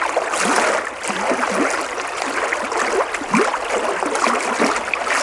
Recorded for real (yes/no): yes